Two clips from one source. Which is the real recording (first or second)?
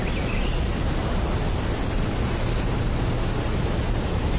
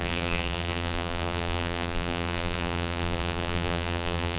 first